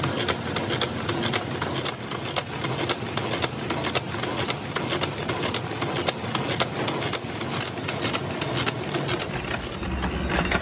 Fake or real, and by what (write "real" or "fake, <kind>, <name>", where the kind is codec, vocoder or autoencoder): real